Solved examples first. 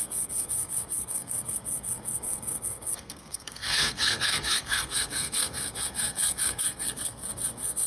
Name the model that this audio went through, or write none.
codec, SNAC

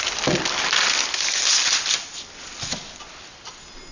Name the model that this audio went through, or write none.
none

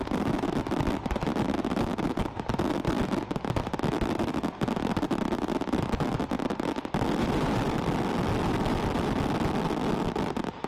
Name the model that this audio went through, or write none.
none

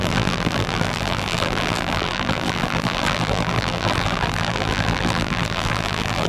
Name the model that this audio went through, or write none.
vocoder, BigVGAN v2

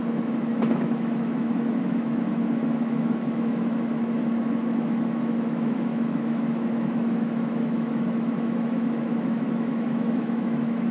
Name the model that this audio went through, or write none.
autoencoder, DAC-VAE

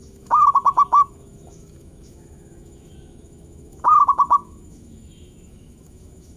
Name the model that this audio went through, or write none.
autoencoder, DAC-VAE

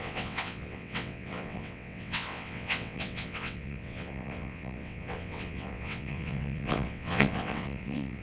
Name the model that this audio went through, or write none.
vocoder, WaveNeXt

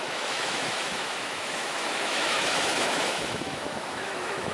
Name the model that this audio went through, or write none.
autoencoder, DAC-VAE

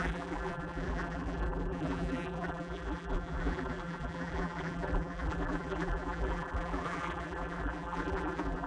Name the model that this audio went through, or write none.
vocoder, BigVGAN v2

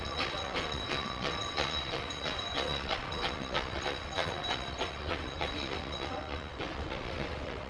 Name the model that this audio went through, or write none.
vocoder, WaveNeXt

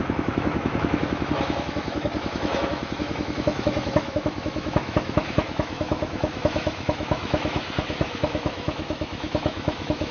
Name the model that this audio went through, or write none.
autoencoder, DAC-VAE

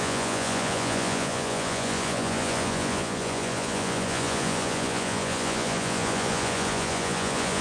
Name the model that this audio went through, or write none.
vocoder, Vocos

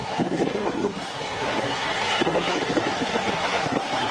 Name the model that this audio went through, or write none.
codec, SNAC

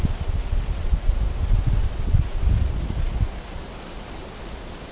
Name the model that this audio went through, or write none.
none